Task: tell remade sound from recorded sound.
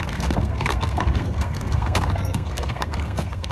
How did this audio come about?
remade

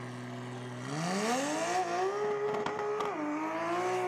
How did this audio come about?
recorded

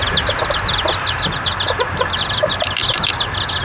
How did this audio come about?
recorded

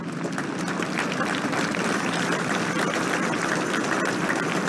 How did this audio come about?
recorded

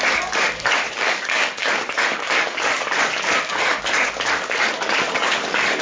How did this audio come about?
remade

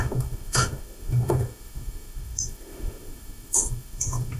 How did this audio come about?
remade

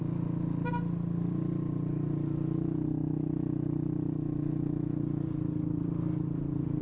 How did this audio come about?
recorded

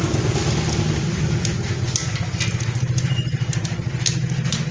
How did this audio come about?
recorded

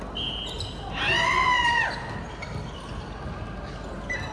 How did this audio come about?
recorded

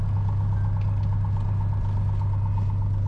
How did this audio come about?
recorded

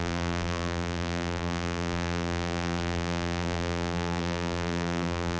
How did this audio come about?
remade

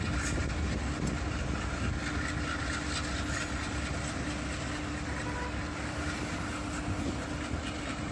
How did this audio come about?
recorded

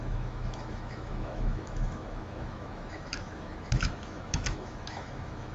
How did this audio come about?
remade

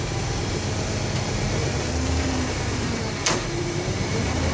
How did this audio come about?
remade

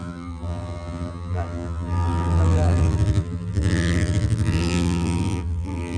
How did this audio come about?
remade